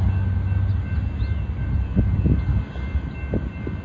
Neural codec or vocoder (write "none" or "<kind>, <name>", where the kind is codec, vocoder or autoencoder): none